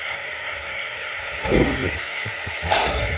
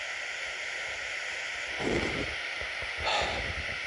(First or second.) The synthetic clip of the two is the first